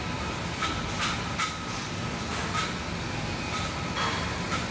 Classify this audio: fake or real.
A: real